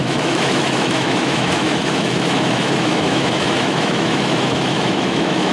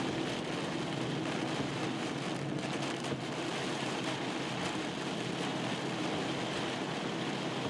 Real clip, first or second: second